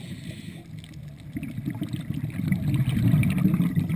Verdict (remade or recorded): recorded